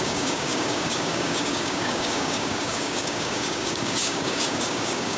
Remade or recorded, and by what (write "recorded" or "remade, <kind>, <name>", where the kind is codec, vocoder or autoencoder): remade, codec, DAC